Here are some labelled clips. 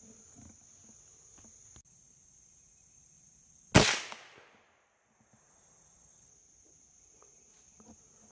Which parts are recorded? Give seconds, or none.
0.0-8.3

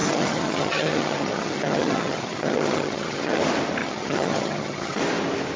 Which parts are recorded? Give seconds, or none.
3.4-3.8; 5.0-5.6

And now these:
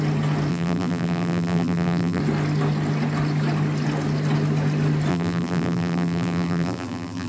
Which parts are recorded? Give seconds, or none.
0.0-0.5; 2.2-5.1